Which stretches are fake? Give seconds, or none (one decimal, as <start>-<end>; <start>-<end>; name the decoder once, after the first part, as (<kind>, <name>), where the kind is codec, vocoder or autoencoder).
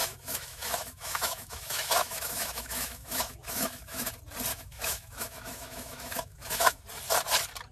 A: 0.0-4.1 (autoencoder, DAC-VAE); 4.5-6.8